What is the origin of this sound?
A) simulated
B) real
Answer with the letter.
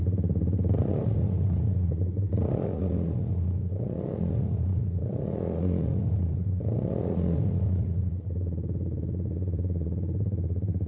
A